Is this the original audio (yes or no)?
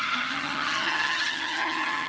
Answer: no